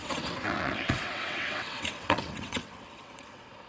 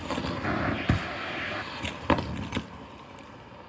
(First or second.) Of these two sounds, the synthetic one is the first